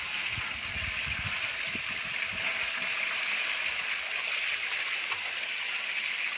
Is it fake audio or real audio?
real